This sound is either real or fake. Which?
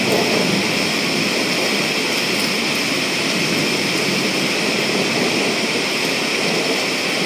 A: real